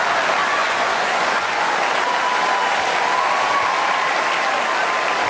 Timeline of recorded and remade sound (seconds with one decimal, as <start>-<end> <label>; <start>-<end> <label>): 0.0-0.4 recorded; 0.4-1.7 remade; 1.7-5.3 recorded